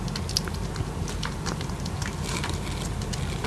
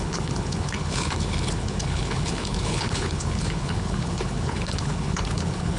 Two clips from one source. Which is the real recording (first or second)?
first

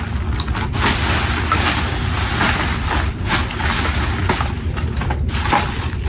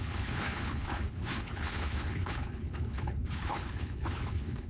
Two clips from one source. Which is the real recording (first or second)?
first